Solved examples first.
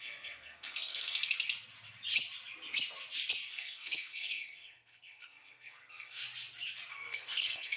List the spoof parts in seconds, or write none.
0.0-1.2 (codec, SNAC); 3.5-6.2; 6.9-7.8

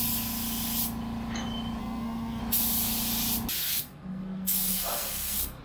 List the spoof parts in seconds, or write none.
1.8-2.4 (codec, SNAC); 3.6-5.6

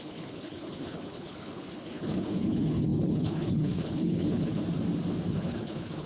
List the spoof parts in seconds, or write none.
0.0-4.6 (codec, HILCodec); 5.3-6.1

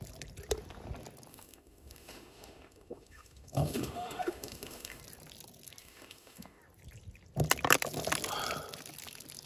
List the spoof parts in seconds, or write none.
1.3-5.0 (autoencoder, DAC-VAE); 5.8-6.6

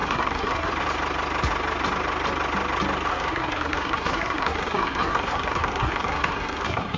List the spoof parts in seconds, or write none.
0.0-0.7 (codec, SNAC); 3.1-7.0

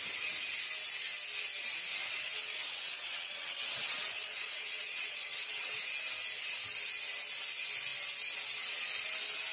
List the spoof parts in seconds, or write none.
2.0-5.8 (vocoder, WaveNeXt)

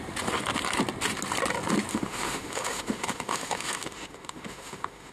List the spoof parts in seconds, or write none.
1.9-5.1 (autoencoder, DAC-VAE)